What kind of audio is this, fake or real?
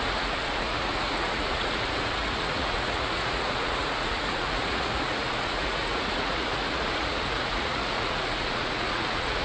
fake